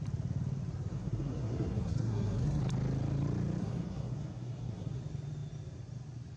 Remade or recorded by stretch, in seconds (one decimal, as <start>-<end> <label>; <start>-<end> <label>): 0.0-0.9 recorded; 0.9-2.6 remade; 2.6-3.6 recorded; 3.6-5.0 remade; 5.0-6.4 recorded

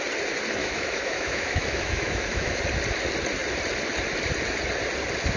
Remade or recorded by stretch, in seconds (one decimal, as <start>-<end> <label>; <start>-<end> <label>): 0.0-0.6 recorded; 0.6-2.6 remade; 2.6-5.4 recorded

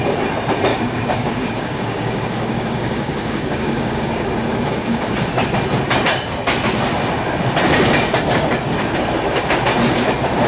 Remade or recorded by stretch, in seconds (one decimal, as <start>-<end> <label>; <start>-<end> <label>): 0.0-0.7 recorded; 0.7-4.8 remade; 4.8-10.5 recorded

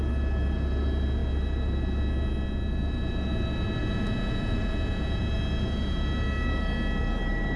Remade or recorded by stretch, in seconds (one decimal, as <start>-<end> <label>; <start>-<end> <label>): 0.0-3.8 recorded; 3.8-5.3 remade; 5.3-7.6 recorded